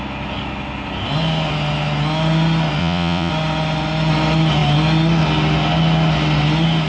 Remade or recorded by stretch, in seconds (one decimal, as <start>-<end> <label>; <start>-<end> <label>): 0.0-2.8 recorded; 2.8-3.3 remade; 3.3-6.9 recorded

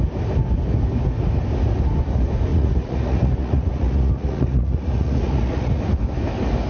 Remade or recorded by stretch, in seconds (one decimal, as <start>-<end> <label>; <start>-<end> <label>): 0.0-2.5 recorded; 2.5-5.8 remade; 5.8-6.7 recorded

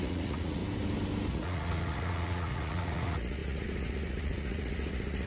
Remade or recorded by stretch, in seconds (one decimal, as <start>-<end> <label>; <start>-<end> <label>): 0.0-0.6 remade; 0.6-1.3 recorded; 1.3-5.3 remade

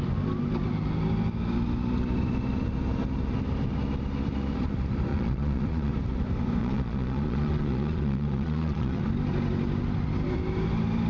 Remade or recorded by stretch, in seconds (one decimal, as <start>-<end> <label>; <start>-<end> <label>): 0.0-5.1 recorded; 5.1-5.9 remade; 5.9-6.6 recorded; 6.6-9.0 remade; 9.0-11.1 recorded

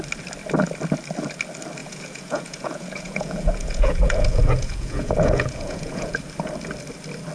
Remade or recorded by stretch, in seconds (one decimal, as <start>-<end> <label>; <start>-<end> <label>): 0.0-1.8 recorded; 1.8-6.2 remade; 6.2-7.3 recorded

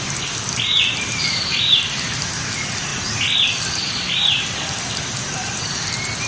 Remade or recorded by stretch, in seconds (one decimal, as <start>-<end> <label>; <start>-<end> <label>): 0.0-6.3 recorded